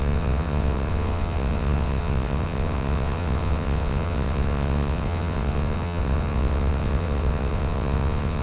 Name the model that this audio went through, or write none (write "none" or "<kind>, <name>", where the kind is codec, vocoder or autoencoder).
vocoder, WaveNeXt